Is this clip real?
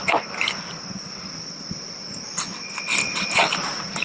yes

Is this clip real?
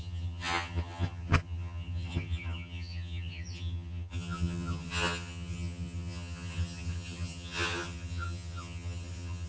no